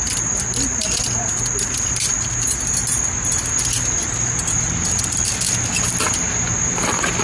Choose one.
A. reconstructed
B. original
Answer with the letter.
B